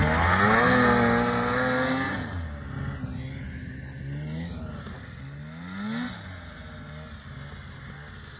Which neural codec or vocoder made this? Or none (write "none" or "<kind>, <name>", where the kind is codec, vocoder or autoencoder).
none